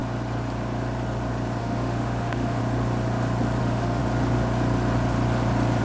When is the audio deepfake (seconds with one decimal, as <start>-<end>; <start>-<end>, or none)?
1.6-2.6; 3.6-4.0